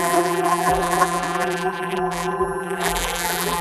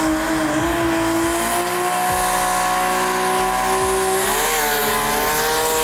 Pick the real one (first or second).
second